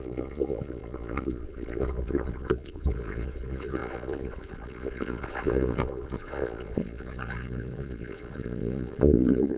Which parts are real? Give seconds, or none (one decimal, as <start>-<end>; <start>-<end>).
none